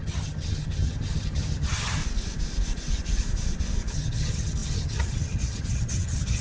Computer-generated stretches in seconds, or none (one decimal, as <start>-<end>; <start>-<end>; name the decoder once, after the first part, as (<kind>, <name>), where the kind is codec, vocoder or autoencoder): 0.0-2.0 (vocoder, HiFi-GAN); 3.9-6.4